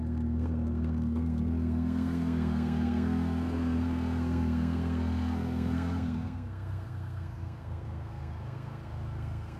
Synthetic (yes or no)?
yes